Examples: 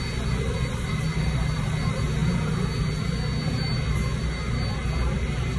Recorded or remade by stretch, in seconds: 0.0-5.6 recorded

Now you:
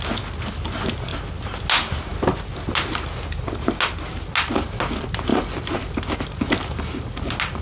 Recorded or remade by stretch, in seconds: 0.0-1.1 recorded; 1.1-1.6 remade; 1.6-5.3 recorded; 5.3-5.8 remade; 5.8-7.6 recorded

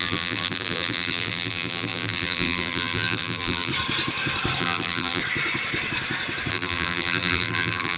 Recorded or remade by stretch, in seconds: 0.0-3.7 remade; 3.7-4.6 recorded; 4.6-5.2 remade; 5.2-6.5 recorded; 6.5-8.0 remade

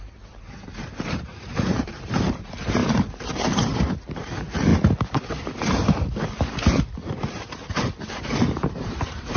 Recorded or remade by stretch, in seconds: 0.0-4.7 remade; 4.7-7.8 recorded; 7.8-9.4 remade

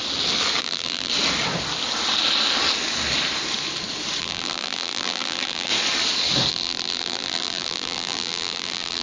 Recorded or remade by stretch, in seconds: 0.0-0.6 recorded; 0.6-1.1 remade; 1.1-4.2 recorded; 4.2-5.7 remade; 5.7-6.5 recorded; 6.5-9.0 remade

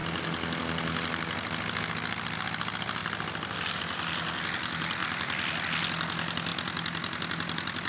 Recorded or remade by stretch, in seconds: 0.0-3.0 recorded; 3.0-3.8 remade; 3.8-5.0 recorded; 5.0-5.6 remade; 5.6-7.9 recorded

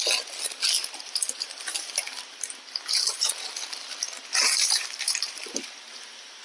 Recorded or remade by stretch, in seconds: 0.0-0.8 recorded; 0.8-3.3 remade; 3.3-4.3 recorded; 4.3-6.4 remade